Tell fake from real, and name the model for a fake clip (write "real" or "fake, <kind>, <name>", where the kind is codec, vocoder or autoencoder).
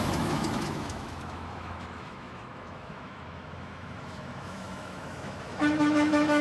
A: fake, autoencoder, DAC-VAE